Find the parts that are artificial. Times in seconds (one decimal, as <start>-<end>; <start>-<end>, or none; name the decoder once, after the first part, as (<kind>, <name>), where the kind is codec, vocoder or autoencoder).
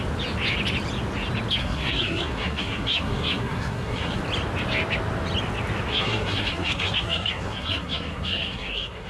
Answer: 1.6-4.2 (codec, SNAC); 5.9-9.1